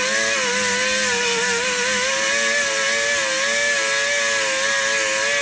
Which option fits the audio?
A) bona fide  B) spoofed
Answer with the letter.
A